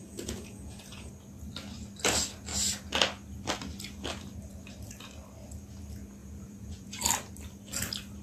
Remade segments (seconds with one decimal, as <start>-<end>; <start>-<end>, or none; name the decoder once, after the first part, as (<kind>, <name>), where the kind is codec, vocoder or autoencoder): 0.0-1.1 (vocoder, Vocos); 6.2-7.0